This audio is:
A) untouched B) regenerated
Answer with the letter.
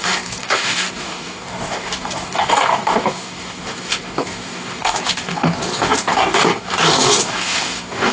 B